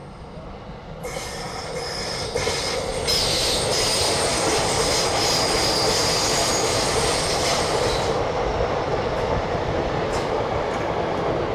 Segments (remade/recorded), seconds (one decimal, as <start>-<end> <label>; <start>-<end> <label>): 0.0-11.5 recorded